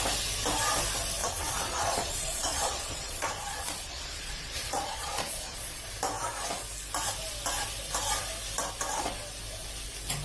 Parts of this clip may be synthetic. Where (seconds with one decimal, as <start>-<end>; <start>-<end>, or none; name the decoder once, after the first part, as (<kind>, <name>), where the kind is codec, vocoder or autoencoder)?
1.2-5.9 (vocoder, Vocos)